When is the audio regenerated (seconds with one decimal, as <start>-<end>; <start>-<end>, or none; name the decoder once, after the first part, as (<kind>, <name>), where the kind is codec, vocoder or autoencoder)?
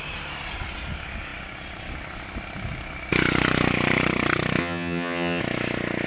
4.6-5.4 (vocoder, HiFi-GAN)